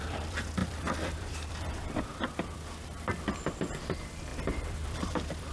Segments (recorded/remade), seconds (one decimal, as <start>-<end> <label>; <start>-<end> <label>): 0.0-5.5 remade